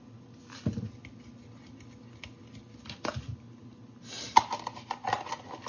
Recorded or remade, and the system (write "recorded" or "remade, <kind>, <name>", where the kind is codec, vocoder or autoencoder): recorded